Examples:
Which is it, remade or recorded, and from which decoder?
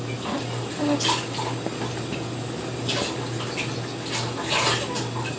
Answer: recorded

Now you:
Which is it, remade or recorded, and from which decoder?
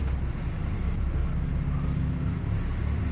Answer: recorded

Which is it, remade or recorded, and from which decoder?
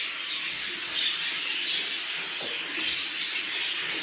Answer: recorded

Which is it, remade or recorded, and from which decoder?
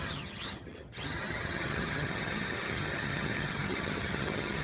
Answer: remade, vocoder, HiFi-GAN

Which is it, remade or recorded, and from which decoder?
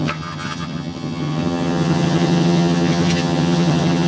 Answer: remade, vocoder, HiFi-GAN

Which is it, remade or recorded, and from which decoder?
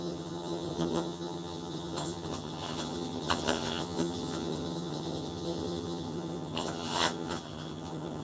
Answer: remade, vocoder, HiFi-GAN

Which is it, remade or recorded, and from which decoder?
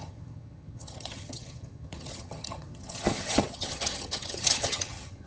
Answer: remade, vocoder, HiFi-GAN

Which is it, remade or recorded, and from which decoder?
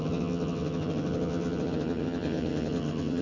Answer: remade, vocoder, HiFi-GAN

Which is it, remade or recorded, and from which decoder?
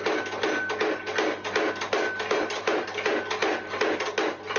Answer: recorded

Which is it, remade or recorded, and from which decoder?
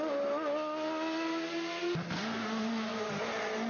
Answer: recorded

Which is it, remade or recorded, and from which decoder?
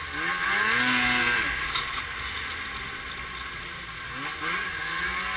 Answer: recorded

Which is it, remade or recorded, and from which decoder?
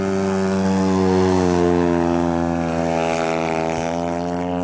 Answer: recorded